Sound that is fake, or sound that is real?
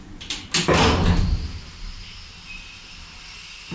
real